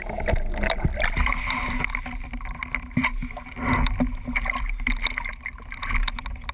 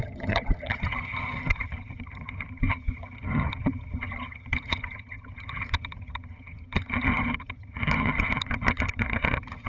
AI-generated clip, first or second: second